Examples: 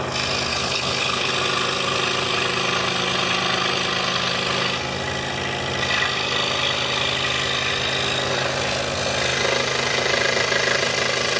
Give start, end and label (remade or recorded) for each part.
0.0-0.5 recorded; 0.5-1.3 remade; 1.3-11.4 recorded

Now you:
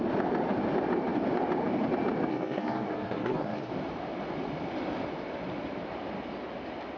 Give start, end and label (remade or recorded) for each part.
0.0-2.3 recorded; 2.3-3.7 remade; 3.7-7.0 recorded

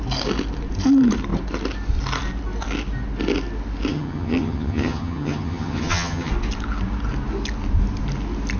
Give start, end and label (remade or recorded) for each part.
0.0-3.9 recorded; 3.9-6.3 remade; 6.3-8.6 recorded